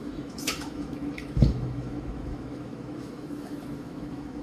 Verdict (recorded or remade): remade